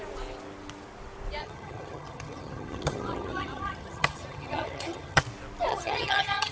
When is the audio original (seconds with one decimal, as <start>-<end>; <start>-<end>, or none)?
0.0-1.4; 5.2-5.7